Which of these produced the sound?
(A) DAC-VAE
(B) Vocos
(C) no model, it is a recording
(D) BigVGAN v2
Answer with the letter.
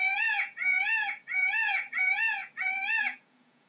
B